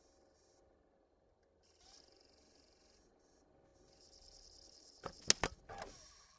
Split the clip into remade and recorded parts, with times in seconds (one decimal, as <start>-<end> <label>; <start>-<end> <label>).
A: 0.0-6.4 recorded

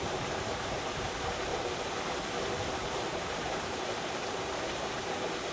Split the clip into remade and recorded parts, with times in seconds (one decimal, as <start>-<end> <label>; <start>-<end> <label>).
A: 0.0-1.5 remade; 1.5-2.7 recorded; 2.7-5.5 remade